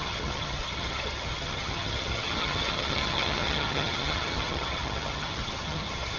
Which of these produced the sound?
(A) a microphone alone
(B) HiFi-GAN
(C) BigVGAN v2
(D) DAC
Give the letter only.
B